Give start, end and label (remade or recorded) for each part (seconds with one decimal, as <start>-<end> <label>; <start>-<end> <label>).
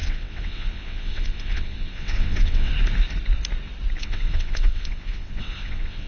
0.0-2.7 remade; 2.7-4.0 recorded; 4.0-6.1 remade